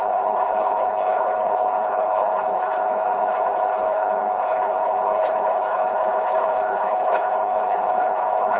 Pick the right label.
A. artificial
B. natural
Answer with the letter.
A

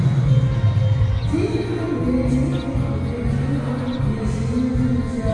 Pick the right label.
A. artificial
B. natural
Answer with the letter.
B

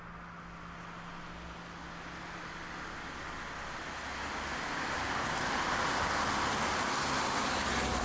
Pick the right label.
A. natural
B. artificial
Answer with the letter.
A